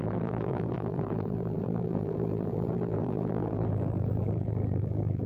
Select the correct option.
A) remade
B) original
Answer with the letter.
A